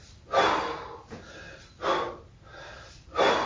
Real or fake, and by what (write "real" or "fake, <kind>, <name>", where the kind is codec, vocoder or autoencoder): real